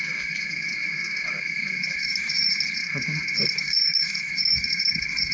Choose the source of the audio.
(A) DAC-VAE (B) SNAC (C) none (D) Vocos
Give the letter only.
A